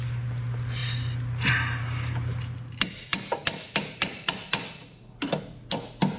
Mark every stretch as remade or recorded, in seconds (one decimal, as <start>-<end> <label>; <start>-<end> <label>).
0.0-3.1 recorded; 3.1-4.3 remade; 4.3-6.2 recorded